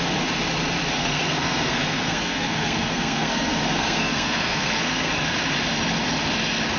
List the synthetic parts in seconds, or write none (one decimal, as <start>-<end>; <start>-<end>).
1.0-5.1